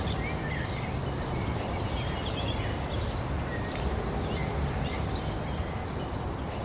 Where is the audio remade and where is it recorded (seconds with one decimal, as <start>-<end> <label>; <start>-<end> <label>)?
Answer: 0.0-6.6 recorded